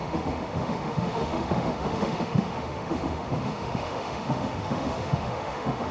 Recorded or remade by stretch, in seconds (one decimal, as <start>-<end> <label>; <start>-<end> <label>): 0.0-5.9 remade